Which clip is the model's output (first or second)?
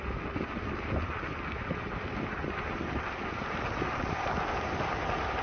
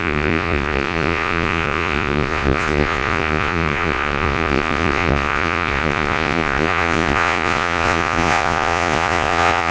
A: second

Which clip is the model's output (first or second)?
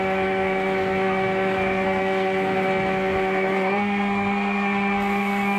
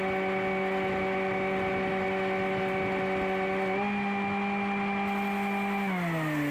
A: first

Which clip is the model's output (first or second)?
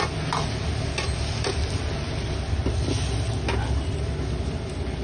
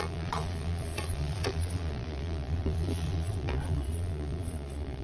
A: second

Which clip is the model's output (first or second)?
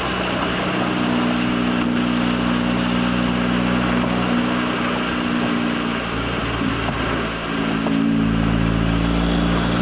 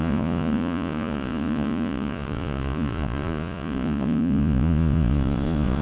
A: second